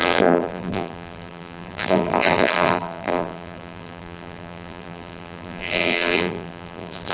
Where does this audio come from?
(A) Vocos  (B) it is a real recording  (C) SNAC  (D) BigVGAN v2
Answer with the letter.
D